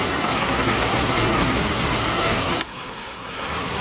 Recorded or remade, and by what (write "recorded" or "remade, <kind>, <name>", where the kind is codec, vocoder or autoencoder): remade, codec, SNAC